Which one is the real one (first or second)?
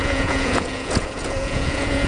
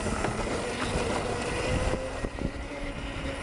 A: second